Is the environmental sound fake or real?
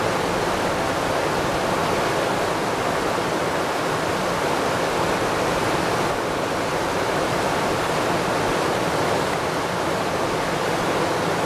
real